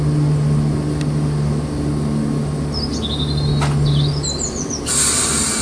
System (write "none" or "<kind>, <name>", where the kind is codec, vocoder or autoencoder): none